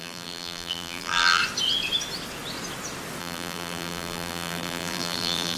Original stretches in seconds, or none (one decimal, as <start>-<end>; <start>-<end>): 1.4-3.2